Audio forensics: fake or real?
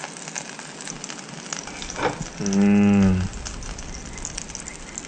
real